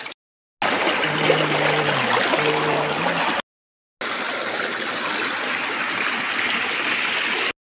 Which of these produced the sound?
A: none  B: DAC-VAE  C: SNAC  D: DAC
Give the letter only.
A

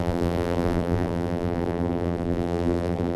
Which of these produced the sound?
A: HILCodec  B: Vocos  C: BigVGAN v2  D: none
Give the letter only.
C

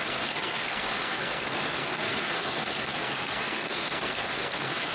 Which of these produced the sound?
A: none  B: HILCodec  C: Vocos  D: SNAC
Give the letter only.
D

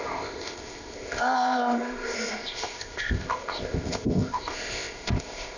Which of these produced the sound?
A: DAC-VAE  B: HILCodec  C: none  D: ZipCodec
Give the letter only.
D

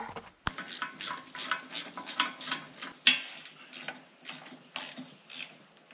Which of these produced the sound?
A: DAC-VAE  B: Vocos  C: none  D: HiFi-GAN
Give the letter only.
C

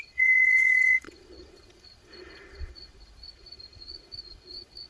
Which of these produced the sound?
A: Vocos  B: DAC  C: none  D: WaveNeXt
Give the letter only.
A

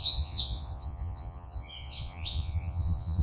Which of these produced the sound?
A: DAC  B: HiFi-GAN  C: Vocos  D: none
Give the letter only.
C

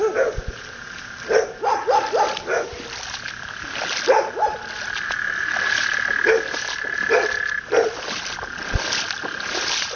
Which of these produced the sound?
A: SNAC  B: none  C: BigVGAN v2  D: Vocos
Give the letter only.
B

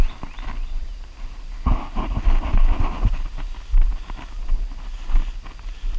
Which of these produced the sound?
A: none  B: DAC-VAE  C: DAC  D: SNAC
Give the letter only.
A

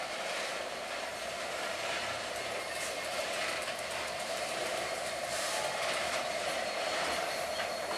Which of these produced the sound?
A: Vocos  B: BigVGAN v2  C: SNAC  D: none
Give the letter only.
B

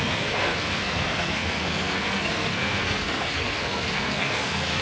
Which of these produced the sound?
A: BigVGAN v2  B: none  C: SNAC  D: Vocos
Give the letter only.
C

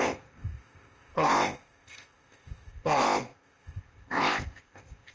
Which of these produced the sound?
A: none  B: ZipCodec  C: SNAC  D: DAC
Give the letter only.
B